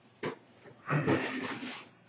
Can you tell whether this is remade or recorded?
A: recorded